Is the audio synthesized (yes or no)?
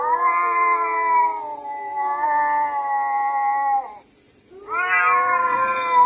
no